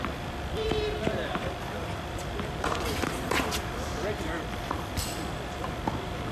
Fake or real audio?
fake